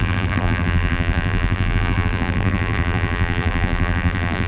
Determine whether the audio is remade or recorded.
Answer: remade